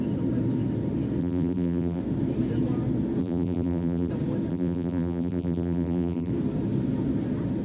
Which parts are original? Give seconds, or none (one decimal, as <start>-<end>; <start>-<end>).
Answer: 0.0-1.2; 2.0-3.2; 4.1-4.5; 6.3-7.6